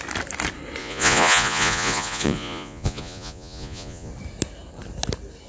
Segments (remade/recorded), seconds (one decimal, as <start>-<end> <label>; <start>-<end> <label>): 0.0-0.8 recorded; 0.8-4.1 remade; 4.1-5.5 recorded